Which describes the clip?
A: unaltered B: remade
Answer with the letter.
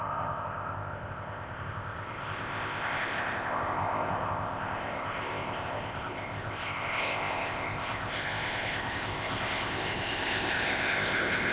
B